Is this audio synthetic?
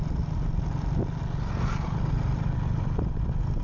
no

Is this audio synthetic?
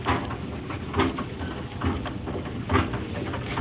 no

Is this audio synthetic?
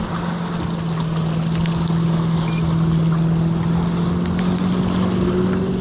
no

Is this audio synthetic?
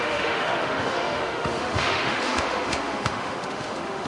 yes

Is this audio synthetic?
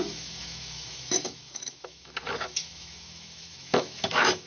yes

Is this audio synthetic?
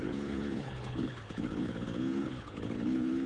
yes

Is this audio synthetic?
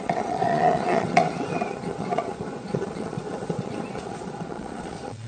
yes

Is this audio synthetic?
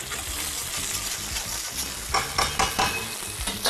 no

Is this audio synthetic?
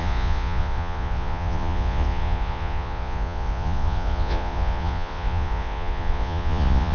yes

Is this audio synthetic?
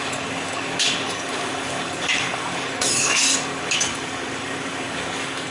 yes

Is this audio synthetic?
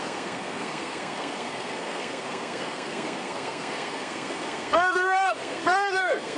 yes